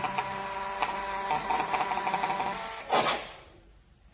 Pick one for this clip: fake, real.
real